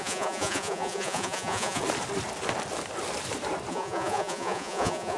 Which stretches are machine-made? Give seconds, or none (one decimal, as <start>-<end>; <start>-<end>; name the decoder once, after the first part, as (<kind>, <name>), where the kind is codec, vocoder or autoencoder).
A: 0.0-1.8 (vocoder, Vocos); 3.7-5.2